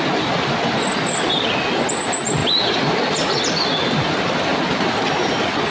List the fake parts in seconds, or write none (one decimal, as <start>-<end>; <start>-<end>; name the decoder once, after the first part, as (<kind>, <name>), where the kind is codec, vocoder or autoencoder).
none